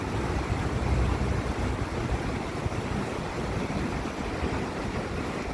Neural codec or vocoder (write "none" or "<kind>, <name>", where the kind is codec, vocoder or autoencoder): none